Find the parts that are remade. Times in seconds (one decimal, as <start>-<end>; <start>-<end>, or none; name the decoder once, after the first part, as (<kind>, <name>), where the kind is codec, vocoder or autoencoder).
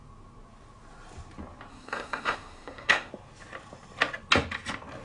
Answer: 1.7-3.1 (codec, SNAC)